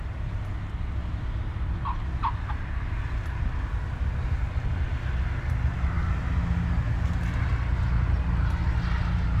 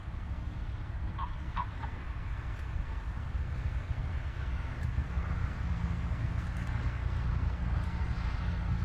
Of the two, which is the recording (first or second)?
first